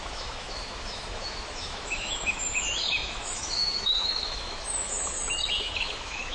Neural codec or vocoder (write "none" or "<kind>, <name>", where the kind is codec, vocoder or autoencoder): autoencoder, DAC-VAE